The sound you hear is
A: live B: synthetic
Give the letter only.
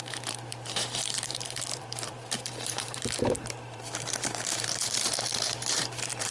B